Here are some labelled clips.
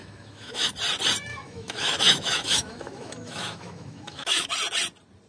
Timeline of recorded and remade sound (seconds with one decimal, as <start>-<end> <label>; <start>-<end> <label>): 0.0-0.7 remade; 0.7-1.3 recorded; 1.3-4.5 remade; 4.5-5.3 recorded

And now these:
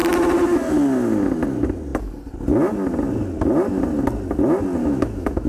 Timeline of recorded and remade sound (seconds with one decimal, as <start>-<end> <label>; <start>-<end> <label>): 0.0-4.8 recorded; 4.8-5.5 remade

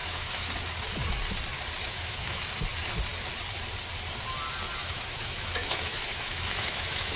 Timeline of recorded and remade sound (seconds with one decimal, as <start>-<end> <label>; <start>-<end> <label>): 0.0-0.5 remade; 0.5-1.8 recorded; 1.8-2.4 remade; 2.4-4.8 recorded; 4.8-7.2 remade

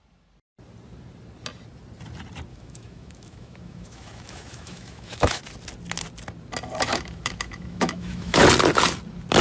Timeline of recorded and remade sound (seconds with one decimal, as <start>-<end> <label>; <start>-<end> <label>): 0.0-2.5 recorded; 2.5-5.4 remade; 5.4-6.9 recorded; 6.9-8.4 remade; 8.4-9.4 recorded